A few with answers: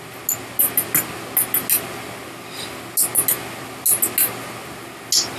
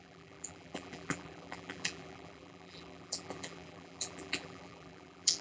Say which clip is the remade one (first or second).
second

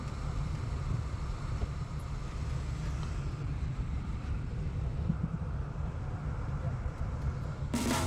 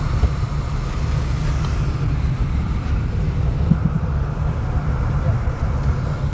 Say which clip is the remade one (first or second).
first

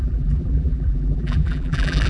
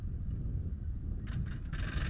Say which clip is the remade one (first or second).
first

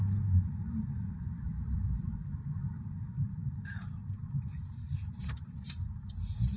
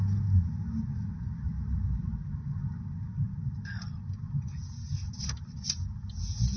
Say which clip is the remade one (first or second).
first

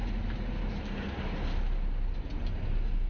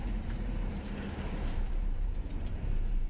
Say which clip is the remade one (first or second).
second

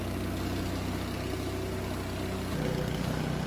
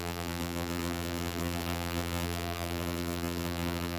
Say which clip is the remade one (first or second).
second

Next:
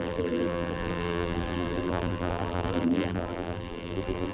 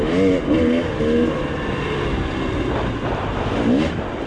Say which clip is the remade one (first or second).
first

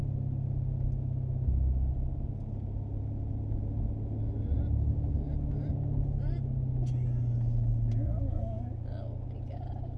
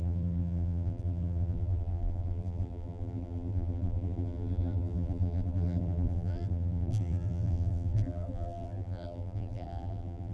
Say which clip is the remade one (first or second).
second